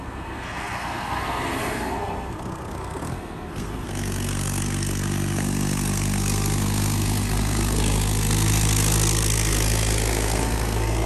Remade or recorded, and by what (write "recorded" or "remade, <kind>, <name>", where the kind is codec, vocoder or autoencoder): remade, codec, SNAC